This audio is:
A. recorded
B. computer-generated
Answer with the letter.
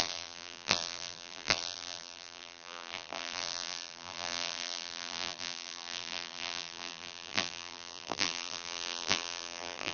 B